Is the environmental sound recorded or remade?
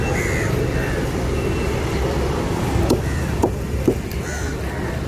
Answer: recorded